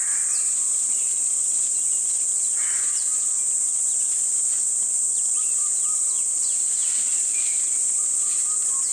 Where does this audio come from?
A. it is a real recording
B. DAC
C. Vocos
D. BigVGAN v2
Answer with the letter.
A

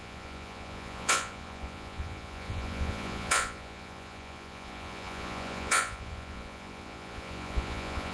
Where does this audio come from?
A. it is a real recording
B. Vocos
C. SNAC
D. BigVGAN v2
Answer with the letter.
B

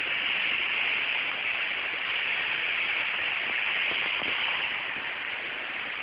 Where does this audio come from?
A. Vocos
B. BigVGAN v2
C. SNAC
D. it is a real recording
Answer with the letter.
D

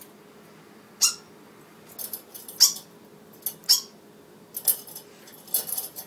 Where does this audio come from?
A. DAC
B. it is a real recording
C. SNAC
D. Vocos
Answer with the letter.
B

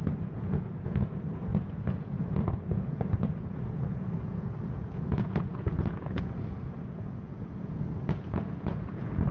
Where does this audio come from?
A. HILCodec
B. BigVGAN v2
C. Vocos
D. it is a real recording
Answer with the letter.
C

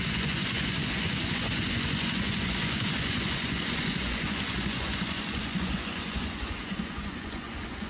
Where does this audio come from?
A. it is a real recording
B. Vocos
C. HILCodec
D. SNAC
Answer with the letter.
B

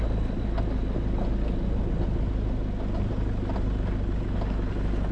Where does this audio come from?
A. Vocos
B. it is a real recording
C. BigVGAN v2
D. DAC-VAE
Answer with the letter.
B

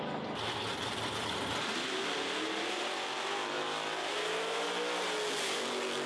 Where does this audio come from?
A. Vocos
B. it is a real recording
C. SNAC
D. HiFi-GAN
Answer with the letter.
B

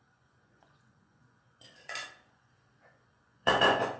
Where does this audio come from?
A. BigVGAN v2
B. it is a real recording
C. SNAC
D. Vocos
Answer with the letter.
D